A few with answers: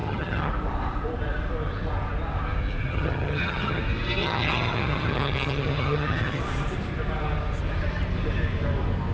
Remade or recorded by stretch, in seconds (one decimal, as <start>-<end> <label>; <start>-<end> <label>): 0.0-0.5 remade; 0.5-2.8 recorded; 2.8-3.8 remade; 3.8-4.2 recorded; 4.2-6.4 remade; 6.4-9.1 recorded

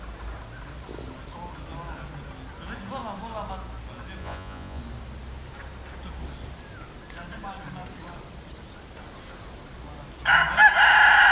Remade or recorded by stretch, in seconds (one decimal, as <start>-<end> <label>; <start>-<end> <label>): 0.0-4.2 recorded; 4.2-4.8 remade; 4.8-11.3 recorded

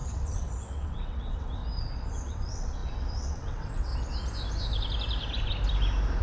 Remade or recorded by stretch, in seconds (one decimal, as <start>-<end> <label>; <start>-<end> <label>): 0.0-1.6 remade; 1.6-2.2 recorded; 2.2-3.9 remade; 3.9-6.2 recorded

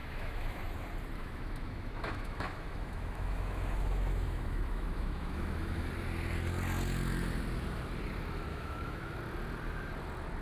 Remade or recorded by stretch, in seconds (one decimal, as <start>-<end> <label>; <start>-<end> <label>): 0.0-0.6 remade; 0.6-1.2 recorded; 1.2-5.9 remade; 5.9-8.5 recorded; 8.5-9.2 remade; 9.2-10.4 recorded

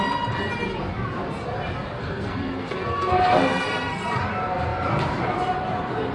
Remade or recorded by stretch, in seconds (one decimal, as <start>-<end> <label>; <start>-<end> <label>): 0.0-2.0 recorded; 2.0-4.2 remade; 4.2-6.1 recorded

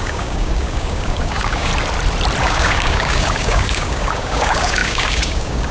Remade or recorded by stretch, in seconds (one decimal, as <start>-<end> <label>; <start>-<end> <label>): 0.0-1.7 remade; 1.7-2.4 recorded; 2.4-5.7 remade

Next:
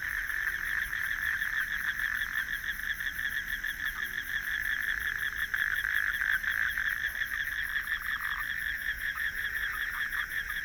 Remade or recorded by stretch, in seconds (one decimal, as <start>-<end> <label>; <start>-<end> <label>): 0.0-8.8 recorded; 8.8-10.6 remade